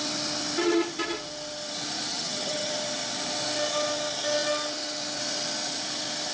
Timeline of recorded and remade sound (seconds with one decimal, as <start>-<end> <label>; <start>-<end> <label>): 0.0-2.1 recorded; 2.1-2.7 remade; 2.7-6.3 recorded